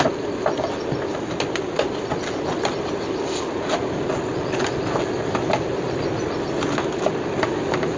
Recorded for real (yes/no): yes